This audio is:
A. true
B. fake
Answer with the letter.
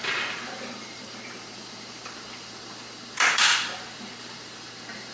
B